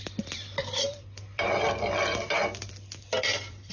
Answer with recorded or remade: remade